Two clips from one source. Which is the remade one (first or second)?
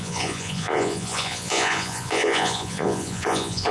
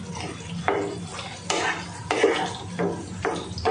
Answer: first